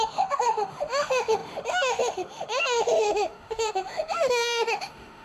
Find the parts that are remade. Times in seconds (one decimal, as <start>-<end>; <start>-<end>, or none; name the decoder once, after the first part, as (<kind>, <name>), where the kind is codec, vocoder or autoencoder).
0.0-5.2 (autoencoder, DAC-VAE)